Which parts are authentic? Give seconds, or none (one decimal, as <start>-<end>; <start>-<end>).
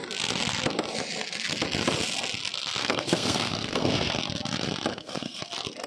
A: 0.0-2.8; 4.1-4.9; 5.4-5.9